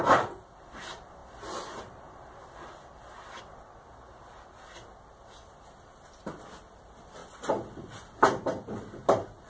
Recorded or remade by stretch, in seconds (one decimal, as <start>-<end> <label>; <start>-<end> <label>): 0.0-9.5 recorded